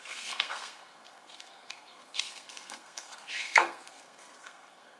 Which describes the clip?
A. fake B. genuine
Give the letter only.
A